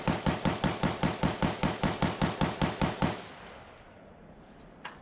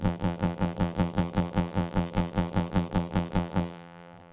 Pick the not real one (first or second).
second